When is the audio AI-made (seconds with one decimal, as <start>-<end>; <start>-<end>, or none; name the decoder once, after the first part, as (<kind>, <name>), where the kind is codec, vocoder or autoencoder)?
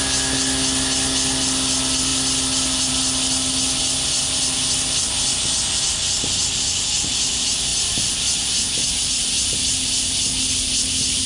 none